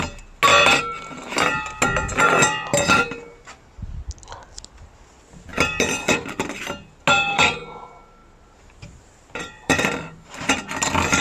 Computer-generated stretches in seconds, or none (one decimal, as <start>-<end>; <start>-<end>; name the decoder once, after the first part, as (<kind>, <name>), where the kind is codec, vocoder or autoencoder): 5.5-6.9 (vocoder, BigVGAN v2); 8.2-11.2